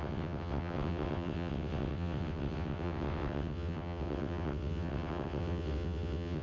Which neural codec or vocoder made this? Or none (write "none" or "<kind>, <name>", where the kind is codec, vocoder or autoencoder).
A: vocoder, WaveNeXt